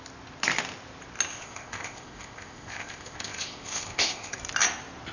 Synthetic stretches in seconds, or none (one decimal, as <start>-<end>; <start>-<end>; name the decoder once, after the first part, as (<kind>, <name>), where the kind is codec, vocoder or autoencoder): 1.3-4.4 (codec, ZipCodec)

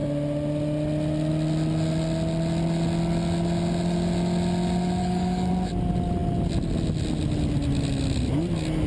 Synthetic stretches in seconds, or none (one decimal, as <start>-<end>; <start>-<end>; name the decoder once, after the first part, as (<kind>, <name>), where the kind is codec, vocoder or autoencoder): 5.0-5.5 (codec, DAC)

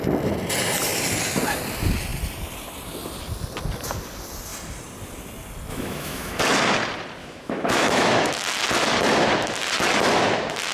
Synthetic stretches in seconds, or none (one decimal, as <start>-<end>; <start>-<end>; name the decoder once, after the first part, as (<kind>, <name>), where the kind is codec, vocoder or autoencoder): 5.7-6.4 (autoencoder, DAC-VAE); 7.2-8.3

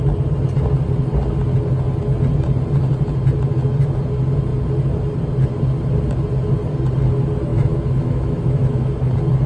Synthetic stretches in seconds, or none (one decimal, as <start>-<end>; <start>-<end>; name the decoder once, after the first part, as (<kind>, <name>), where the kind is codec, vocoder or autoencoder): 7.5-8.9 (autoencoder, DAC-VAE)

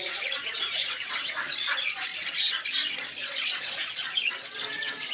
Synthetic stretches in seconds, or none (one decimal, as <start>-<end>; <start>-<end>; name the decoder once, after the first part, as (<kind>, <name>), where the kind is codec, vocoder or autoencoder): 0.0-2.1 (vocoder, Vocos); 2.9-5.1